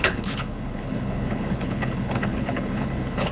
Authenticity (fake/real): fake